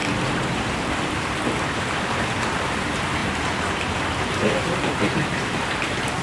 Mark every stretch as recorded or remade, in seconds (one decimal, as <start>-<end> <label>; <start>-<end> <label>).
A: 0.0-3.2 remade; 3.2-5.5 recorded; 5.5-6.2 remade